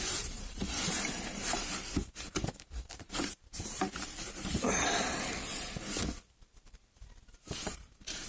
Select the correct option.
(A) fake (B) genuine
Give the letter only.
A